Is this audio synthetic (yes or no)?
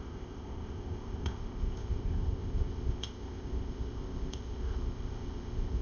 yes